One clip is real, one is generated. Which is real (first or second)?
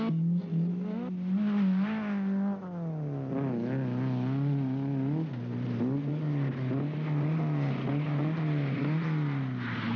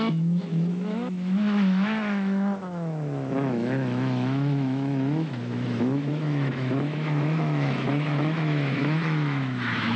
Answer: first